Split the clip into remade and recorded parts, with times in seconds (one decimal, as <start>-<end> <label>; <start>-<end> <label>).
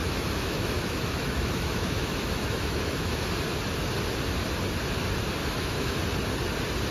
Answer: 0.0-3.3 remade; 3.3-5.4 recorded; 5.4-6.0 remade; 6.0-6.9 recorded